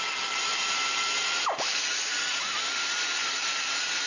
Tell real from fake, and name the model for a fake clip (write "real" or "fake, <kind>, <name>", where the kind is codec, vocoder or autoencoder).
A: real